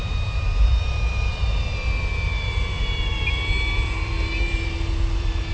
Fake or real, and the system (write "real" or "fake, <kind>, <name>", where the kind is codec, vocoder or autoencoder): fake, vocoder, BigVGAN v2